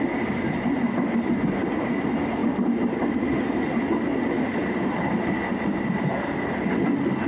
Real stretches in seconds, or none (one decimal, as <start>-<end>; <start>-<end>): 0.0-7.3